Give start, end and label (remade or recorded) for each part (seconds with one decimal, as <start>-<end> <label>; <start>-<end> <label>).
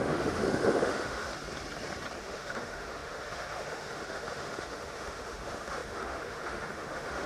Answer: 0.0-1.3 remade; 1.3-2.2 recorded; 2.2-7.3 remade